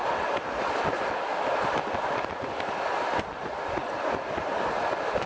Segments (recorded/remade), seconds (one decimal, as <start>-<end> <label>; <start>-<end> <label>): 0.0-0.8 remade; 0.8-1.3 recorded; 1.3-2.2 remade; 2.2-5.3 recorded